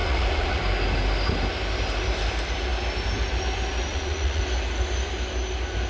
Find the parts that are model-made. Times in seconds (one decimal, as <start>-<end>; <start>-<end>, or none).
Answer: 0.0-0.6; 3.9-4.4